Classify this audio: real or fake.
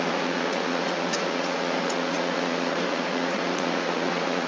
fake